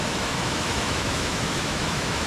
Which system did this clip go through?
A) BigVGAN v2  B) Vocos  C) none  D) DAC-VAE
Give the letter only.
D